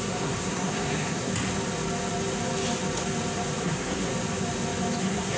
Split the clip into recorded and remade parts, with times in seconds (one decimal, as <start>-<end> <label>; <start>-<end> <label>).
0.0-1.3 remade; 1.3-3.6 recorded; 3.6-4.1 remade; 4.1-5.0 recorded; 5.0-5.4 remade